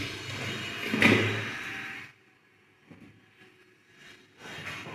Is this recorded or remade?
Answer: recorded